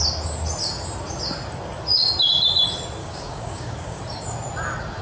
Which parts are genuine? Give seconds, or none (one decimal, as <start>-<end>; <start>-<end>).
0.0-3.0; 4.0-5.0